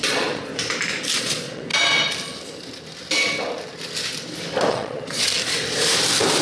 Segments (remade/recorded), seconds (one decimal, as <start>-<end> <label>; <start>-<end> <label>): 0.0-0.5 remade; 0.5-1.2 recorded; 1.2-1.7 remade; 1.7-4.7 recorded; 4.7-5.3 remade; 5.3-6.4 recorded